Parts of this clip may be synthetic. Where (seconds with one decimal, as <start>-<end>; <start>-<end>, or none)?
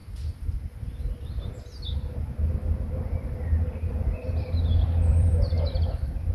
3.9-5.3